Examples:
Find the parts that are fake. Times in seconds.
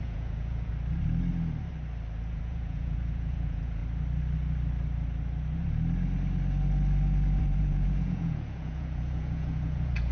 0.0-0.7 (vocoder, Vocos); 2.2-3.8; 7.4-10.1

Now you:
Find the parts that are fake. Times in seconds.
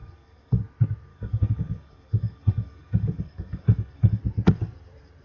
0.0-0.6 (codec, DAC); 1.1-4.2